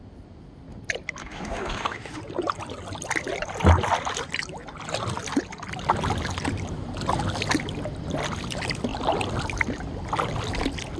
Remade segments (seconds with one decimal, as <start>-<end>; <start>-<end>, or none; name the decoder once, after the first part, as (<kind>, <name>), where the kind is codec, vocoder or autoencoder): 1.2-2.2 (autoencoder, DAC-VAE)

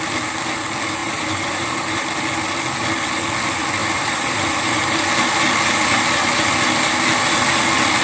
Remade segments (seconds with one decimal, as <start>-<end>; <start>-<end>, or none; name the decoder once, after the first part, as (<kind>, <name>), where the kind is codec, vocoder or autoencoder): 1.0-2.0 (vocoder, BigVGAN v2); 3.8-5.0